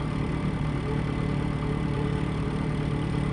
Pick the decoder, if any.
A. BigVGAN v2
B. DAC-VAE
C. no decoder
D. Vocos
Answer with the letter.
A